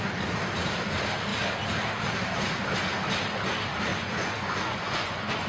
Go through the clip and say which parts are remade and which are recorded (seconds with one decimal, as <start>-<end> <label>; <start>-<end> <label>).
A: 0.0-3.9 recorded; 3.9-5.5 remade